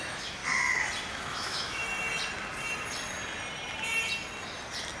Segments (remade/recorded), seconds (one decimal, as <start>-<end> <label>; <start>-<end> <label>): 0.0-0.4 remade; 0.4-1.1 recorded; 1.1-1.8 remade; 1.8-5.0 recorded